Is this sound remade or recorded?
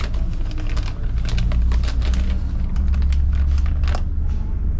recorded